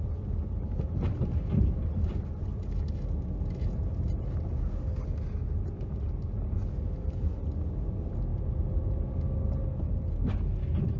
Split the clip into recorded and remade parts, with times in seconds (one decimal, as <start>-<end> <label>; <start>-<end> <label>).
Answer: 0.0-11.0 recorded